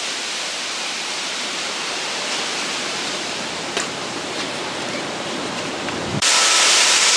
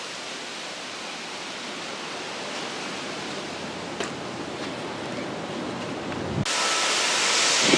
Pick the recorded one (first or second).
second